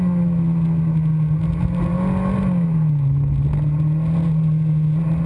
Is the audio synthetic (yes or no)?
no